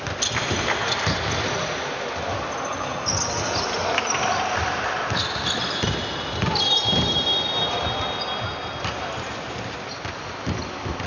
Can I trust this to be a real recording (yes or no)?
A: yes